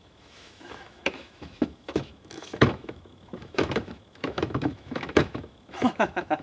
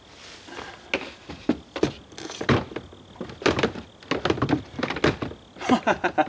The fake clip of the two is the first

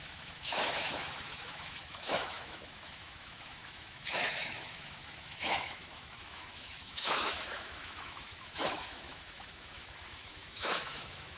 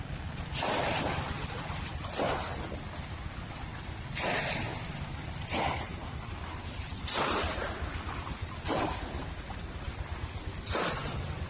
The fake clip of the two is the first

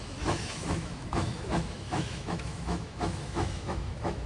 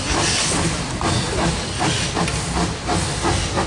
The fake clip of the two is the first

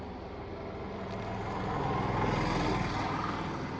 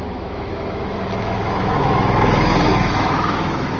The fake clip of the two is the second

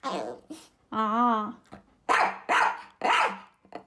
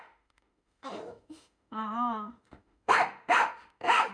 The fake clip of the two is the second